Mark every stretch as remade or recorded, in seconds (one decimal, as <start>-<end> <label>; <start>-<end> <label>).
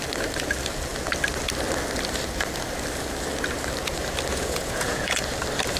0.0-4.3 recorded; 4.3-5.2 remade; 5.2-5.8 recorded